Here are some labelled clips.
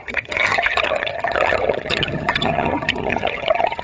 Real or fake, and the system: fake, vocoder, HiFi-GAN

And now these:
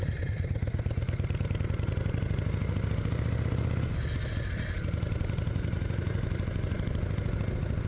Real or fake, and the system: real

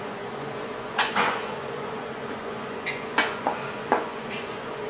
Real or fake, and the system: fake, vocoder, Vocos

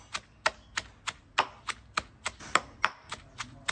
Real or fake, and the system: real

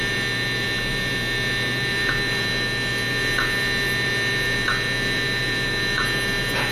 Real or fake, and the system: fake, vocoder, Vocos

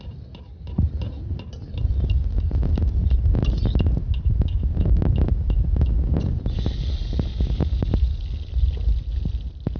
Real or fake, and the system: real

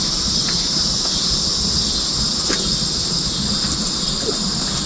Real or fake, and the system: real